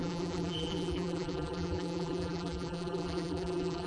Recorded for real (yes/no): no